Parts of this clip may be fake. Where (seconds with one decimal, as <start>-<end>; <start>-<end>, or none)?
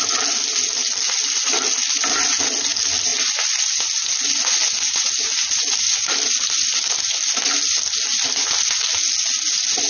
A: none